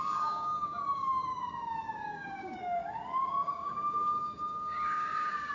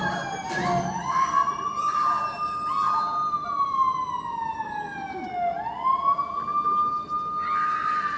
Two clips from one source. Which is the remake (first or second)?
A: first